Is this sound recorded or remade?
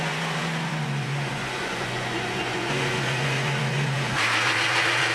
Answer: remade